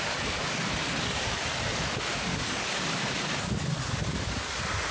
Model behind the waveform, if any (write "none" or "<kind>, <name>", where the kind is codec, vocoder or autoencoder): codec, DAC